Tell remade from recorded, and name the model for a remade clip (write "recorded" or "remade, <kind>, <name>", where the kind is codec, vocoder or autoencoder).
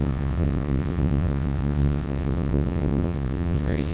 remade, vocoder, WaveNeXt